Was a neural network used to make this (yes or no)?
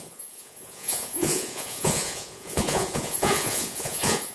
yes